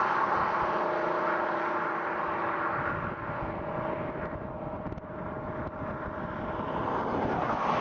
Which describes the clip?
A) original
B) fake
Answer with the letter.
A